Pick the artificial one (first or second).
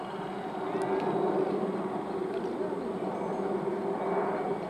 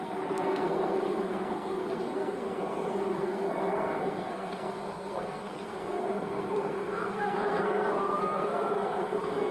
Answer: second